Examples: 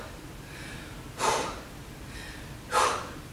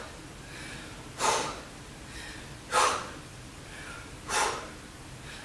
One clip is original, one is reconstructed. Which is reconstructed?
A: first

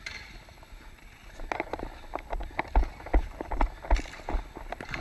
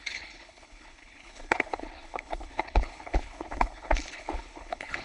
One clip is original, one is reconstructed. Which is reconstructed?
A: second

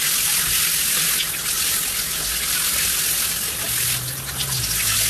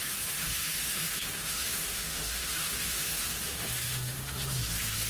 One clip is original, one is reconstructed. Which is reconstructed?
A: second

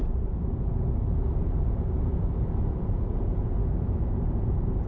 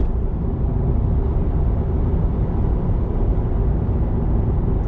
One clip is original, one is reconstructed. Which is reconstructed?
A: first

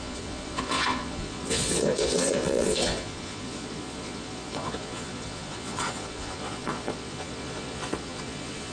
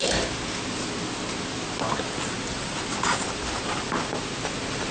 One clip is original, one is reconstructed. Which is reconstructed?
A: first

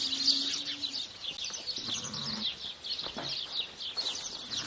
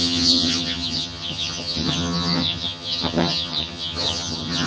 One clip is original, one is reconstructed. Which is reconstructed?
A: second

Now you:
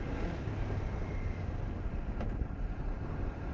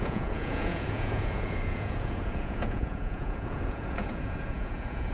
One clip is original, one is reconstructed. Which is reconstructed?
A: second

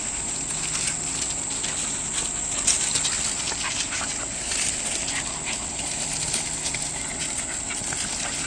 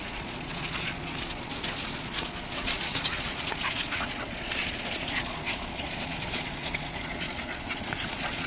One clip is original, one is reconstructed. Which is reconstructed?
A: second